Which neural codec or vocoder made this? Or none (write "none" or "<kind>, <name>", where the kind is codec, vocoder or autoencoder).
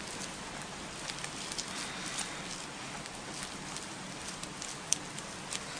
none